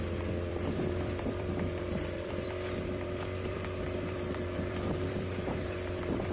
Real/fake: fake